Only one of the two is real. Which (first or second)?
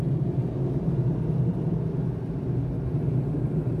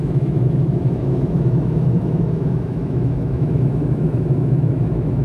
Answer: first